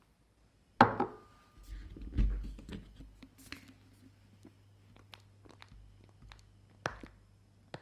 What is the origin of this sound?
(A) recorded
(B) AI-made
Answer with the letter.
A